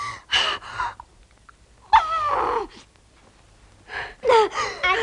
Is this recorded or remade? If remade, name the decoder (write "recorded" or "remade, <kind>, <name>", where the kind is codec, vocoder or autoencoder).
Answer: recorded